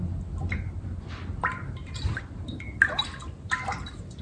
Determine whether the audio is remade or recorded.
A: recorded